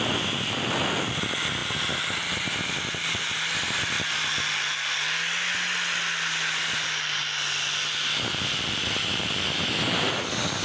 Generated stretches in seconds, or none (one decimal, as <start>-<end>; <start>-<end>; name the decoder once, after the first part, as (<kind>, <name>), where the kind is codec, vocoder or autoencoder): none